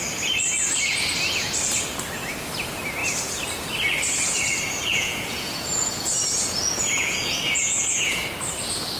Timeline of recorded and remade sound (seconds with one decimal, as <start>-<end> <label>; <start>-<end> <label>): 0.0-4.9 recorded; 4.9-8.2 remade; 8.2-9.0 recorded